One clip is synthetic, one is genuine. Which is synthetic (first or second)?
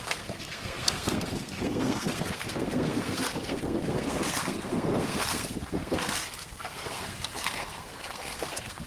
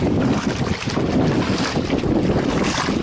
first